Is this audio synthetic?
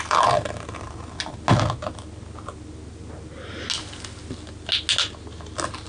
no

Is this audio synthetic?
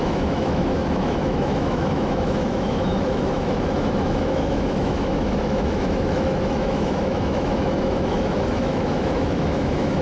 yes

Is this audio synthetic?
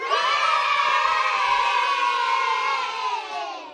yes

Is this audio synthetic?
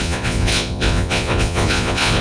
yes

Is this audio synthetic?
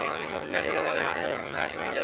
yes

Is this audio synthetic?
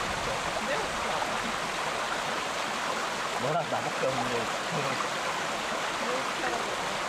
no